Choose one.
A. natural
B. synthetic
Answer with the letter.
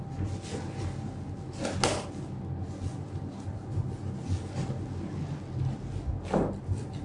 A